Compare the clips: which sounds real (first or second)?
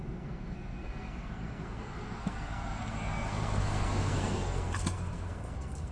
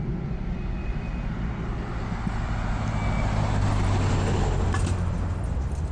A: second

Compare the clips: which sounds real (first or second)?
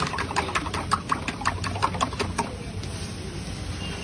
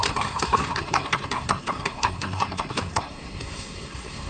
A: first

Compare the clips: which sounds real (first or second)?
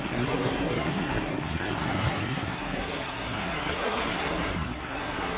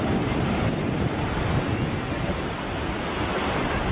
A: second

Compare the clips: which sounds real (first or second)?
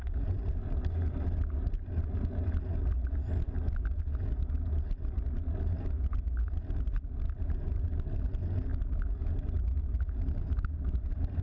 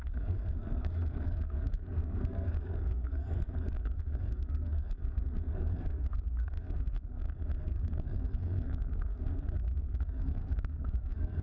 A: first